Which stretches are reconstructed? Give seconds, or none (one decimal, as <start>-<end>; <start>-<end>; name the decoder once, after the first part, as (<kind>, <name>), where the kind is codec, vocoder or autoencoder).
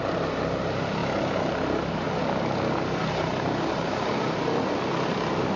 none